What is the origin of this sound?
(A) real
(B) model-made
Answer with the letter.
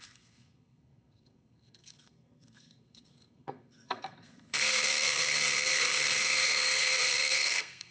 B